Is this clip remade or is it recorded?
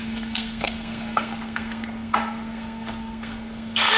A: remade